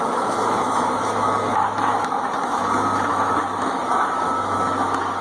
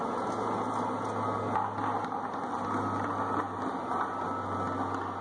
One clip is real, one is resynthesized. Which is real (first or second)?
second